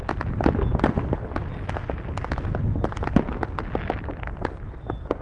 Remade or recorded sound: recorded